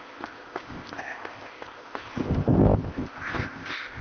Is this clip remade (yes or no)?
yes